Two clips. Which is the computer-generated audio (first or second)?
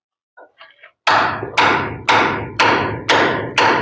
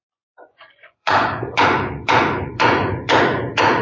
second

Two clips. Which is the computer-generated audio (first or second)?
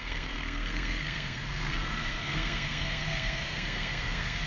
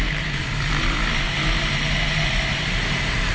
first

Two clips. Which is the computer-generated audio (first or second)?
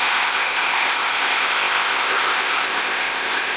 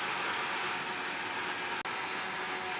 first